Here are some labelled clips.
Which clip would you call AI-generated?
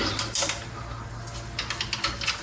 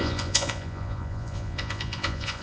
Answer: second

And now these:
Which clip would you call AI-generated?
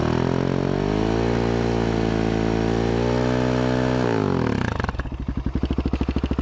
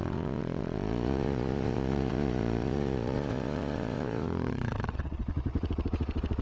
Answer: second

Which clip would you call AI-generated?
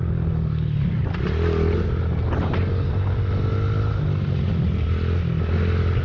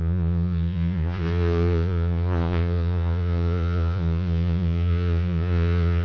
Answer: second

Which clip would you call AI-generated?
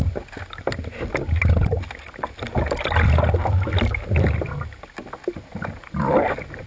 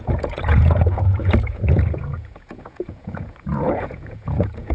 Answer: second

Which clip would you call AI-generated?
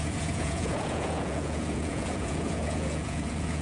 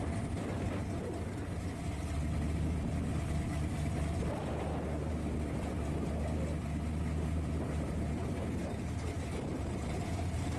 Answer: first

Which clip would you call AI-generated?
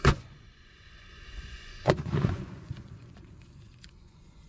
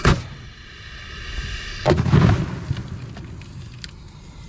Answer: first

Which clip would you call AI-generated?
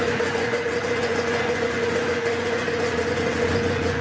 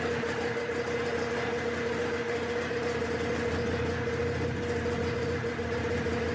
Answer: first